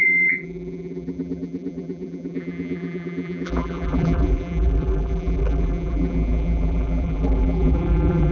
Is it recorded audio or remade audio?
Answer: remade